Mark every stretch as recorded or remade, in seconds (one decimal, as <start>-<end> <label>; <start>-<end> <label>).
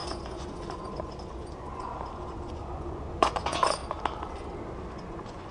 0.0-3.8 remade; 3.8-4.9 recorded; 4.9-5.5 remade